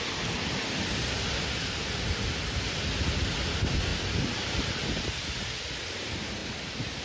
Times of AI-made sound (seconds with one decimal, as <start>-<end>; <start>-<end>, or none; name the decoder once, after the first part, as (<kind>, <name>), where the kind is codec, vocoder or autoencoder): none